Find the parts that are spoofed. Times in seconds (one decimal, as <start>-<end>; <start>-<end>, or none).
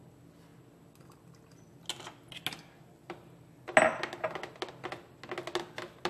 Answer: none